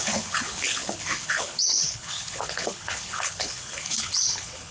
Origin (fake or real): fake